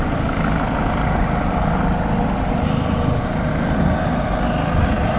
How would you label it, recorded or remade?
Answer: recorded